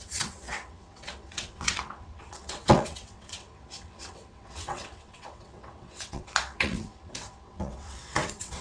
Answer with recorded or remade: remade